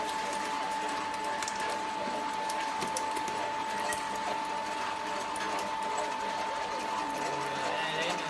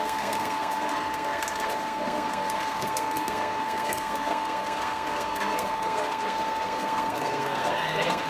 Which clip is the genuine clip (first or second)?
first